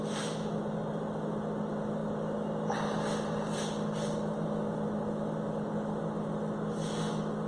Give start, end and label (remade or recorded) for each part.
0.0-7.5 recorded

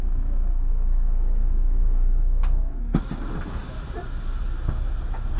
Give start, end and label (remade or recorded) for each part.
0.0-0.5 recorded; 0.5-3.0 remade; 3.0-5.4 recorded

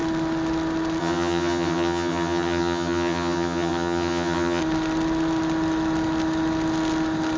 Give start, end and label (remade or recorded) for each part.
0.0-1.0 recorded; 1.0-4.6 remade; 4.6-7.4 recorded

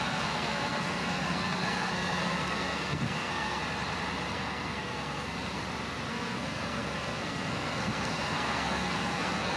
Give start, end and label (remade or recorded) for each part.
0.0-3.6 remade; 3.6-4.3 recorded; 4.3-5.6 remade; 5.6-6.1 recorded; 6.1-9.6 remade

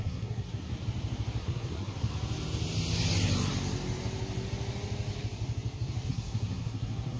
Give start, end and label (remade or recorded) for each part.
0.0-0.7 remade; 0.7-1.4 recorded; 1.4-2.1 remade; 2.1-6.1 recorded; 6.1-7.2 remade

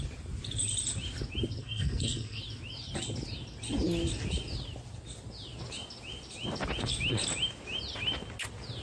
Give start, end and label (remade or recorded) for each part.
0.0-1.6 recorded; 1.6-2.4 remade; 2.4-8.8 recorded

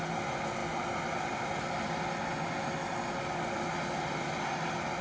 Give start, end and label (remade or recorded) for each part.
0.0-5.0 recorded

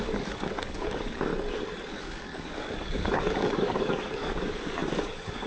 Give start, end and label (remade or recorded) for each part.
0.0-1.3 remade; 1.3-1.9 recorded; 1.9-5.5 remade